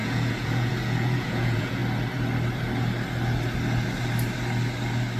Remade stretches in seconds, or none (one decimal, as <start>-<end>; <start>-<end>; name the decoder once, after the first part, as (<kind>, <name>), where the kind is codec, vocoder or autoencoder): 0.0-1.8 (vocoder, Vocos)